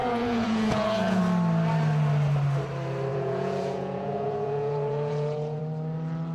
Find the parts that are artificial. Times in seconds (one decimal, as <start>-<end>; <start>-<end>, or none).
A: 0.0-1.2; 3.1-5.6